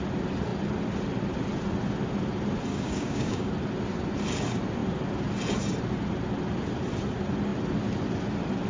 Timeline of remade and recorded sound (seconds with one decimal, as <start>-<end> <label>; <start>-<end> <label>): 0.0-2.7 recorded; 2.7-3.5 remade; 3.5-8.7 recorded